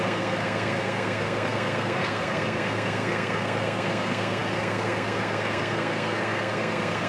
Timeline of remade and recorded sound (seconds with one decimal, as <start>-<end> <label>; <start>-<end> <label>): 0.0-7.1 remade